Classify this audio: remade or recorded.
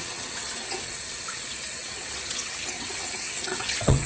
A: remade